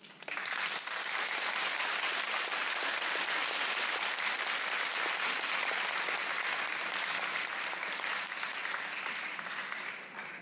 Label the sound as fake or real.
real